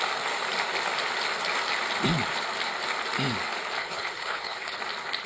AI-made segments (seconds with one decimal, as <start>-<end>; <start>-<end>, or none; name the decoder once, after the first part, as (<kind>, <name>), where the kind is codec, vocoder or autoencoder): 3.8-4.8 (codec, HILCodec)